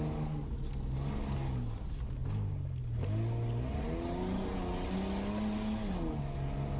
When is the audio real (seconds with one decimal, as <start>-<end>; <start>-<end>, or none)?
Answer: 0.0-6.8